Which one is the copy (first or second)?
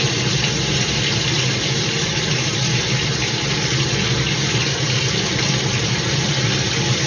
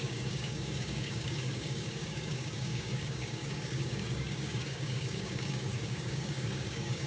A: second